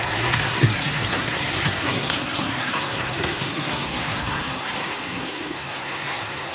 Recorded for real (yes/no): no